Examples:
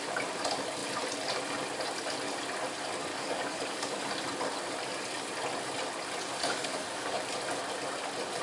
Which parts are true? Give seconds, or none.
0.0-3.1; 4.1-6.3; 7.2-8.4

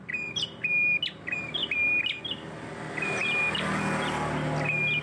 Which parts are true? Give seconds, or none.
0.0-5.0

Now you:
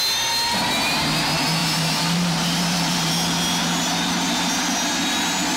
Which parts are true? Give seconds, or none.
0.0-1.6; 3.1-5.6